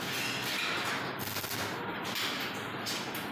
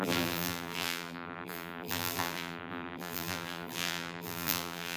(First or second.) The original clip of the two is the first